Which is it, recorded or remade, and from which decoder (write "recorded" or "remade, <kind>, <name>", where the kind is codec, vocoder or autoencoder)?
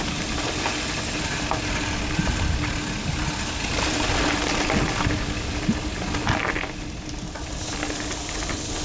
recorded